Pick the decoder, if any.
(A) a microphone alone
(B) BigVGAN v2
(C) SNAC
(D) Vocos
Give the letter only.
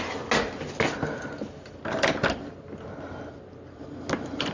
A